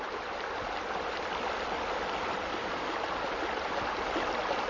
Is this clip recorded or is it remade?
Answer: recorded